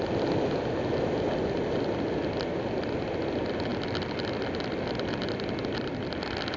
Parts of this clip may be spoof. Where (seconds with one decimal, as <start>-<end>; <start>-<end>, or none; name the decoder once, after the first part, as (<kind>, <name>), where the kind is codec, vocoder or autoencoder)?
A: none